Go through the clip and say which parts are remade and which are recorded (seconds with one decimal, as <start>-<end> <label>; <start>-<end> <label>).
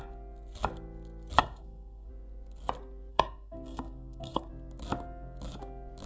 0.0-1.4 recorded; 1.4-2.1 remade; 2.1-3.1 recorded; 3.1-4.5 remade; 4.5-6.1 recorded